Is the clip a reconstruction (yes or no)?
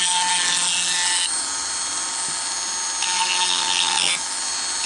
no